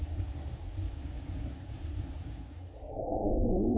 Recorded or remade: remade